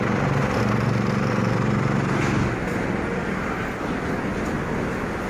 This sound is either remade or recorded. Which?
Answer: recorded